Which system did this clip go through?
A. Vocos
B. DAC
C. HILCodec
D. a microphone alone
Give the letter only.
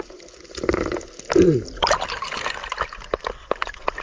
D